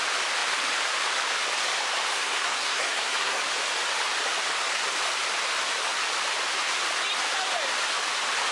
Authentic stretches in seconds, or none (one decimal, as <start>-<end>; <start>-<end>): 0.0-2.1; 3.4-8.5